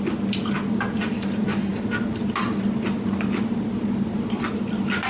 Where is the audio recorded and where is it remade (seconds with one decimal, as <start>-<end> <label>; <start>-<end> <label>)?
0.0-5.1 recorded